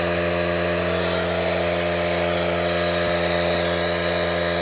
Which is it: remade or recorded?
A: recorded